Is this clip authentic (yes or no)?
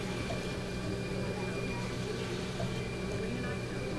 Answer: yes